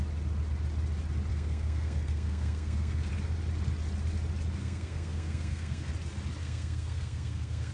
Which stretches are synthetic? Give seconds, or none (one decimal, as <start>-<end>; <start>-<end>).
1.3-3.1; 4.6-5.9; 6.4-7.7

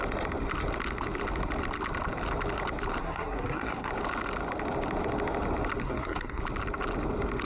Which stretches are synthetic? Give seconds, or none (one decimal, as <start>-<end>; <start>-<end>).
3.0-3.9; 5.8-6.4

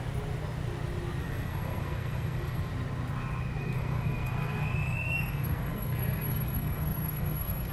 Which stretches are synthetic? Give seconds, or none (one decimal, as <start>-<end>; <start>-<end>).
1.2-2.7; 3.6-7.7

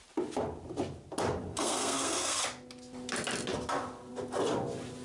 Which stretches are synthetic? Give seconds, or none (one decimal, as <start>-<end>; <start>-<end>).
1.5-2.4

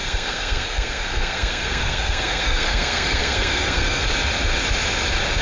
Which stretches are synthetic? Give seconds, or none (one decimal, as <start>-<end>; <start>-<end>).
0.0-4.0

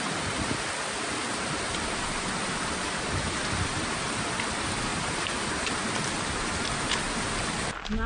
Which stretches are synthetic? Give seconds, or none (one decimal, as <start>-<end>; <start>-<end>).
none

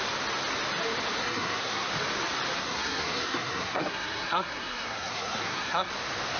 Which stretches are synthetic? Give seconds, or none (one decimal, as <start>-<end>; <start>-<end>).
1.2-1.9; 2.6-5.9